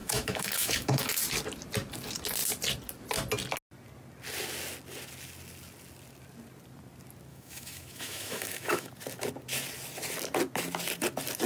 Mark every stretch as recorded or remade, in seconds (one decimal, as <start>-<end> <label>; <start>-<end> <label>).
0.0-1.1 remade; 1.1-7.3 recorded; 7.3-8.9 remade; 8.9-11.5 recorded